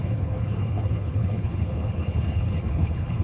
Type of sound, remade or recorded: remade